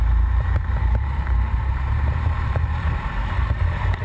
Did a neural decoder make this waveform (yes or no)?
yes